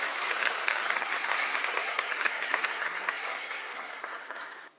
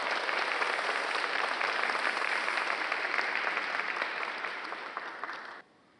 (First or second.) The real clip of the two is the second